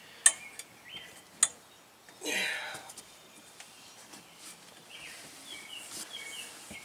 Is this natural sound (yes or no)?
yes